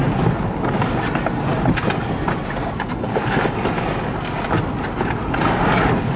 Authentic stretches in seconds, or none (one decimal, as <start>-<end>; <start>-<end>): 0.0-6.2